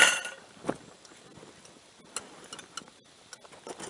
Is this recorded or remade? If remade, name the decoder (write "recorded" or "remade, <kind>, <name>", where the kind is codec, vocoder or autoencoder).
recorded